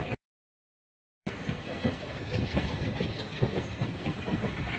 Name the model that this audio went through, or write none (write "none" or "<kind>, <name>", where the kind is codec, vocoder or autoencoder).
codec, SNAC